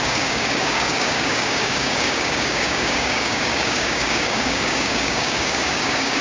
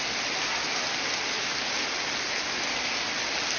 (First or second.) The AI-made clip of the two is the first